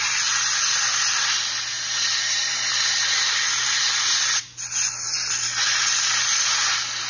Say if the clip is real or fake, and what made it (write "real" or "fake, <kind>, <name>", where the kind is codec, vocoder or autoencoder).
real